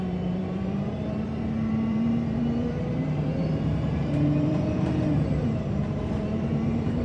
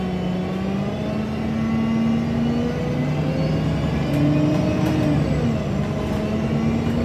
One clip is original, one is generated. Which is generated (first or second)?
first